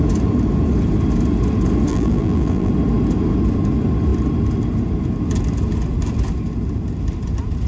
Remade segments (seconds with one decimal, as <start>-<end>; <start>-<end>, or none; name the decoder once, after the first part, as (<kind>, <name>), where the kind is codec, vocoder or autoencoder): 1.9-2.7 (vocoder, BigVGAN v2)